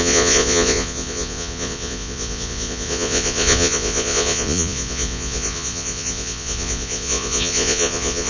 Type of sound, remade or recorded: remade